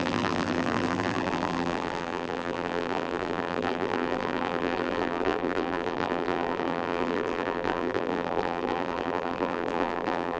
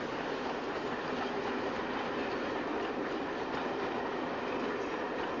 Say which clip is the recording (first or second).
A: second